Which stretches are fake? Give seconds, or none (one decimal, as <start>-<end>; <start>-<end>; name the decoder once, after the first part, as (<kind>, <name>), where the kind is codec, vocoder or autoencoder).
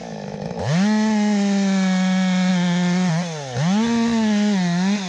0.0-0.6 (autoencoder, DAC-VAE)